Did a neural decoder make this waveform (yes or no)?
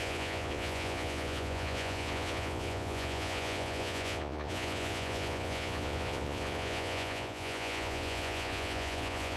yes